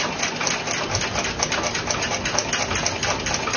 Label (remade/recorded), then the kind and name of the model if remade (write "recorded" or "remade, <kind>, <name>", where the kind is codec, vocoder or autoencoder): recorded